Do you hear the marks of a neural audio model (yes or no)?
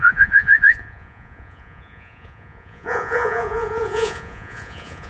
yes